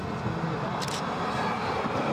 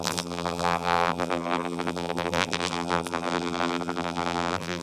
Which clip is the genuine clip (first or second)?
first